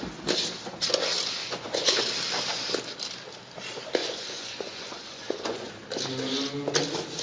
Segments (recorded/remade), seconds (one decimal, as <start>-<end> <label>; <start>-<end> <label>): 0.0-1.4 recorded; 1.4-2.0 remade; 2.0-4.0 recorded; 4.0-5.7 remade; 5.7-7.2 recorded